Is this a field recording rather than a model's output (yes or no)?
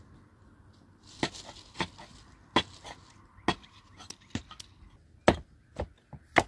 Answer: yes